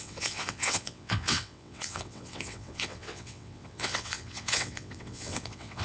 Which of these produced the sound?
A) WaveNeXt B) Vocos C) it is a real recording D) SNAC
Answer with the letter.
A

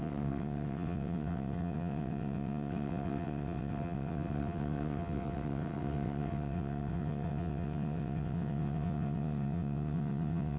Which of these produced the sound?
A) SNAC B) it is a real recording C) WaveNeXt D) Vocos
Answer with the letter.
C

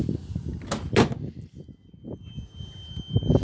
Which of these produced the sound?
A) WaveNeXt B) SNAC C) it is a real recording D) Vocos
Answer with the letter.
C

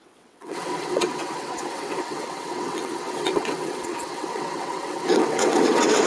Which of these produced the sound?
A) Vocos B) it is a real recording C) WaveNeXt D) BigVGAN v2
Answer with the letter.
C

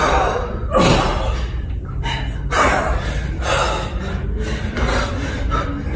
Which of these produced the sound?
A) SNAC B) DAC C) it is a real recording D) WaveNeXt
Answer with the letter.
C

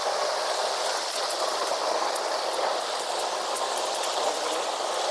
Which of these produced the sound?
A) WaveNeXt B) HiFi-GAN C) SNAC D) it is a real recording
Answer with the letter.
D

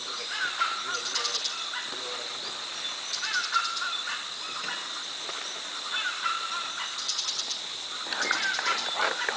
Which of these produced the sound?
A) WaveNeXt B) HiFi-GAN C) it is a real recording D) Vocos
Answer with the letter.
C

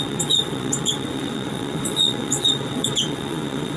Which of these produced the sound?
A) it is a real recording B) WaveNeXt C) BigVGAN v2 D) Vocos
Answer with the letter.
B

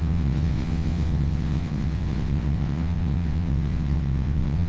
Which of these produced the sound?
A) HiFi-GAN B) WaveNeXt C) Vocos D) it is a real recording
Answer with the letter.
B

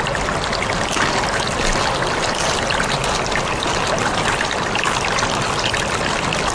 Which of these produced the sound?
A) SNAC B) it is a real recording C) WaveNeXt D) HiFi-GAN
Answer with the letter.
B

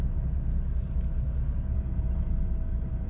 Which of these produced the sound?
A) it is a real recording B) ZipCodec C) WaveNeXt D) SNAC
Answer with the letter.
A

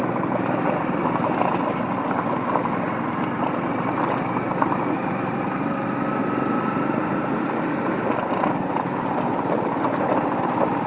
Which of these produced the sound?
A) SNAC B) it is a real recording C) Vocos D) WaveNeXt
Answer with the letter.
B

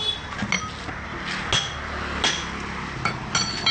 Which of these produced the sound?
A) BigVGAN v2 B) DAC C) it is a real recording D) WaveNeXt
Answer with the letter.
C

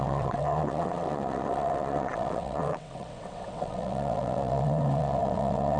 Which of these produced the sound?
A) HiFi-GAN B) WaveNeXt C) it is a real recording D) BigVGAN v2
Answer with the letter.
B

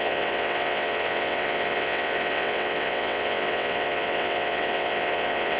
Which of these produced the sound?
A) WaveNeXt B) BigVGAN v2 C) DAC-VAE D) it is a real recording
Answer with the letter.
A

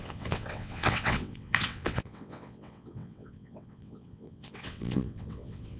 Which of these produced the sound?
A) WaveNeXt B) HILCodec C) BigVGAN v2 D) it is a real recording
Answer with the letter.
A